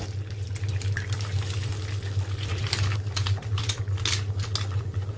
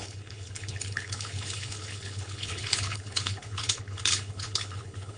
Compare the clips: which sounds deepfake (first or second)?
second